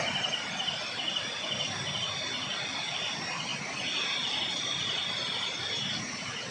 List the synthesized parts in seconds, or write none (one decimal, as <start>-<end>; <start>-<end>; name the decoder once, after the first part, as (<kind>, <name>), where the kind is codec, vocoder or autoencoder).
none